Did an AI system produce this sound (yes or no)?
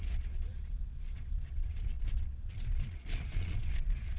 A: yes